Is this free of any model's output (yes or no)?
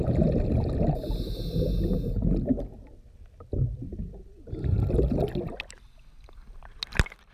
yes